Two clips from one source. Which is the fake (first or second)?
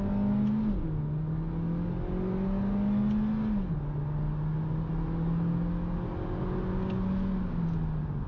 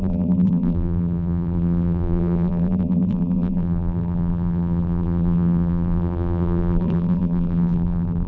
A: second